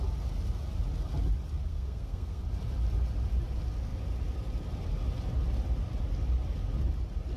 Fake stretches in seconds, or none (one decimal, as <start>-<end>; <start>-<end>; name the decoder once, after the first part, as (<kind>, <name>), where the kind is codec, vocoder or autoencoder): 1.7-2.4 (codec, SNAC)